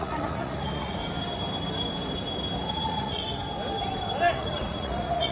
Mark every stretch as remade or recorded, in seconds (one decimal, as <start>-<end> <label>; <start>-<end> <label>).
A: 0.0-1.0 remade; 1.0-2.7 recorded; 2.7-3.2 remade; 3.2-4.3 recorded; 4.3-5.3 remade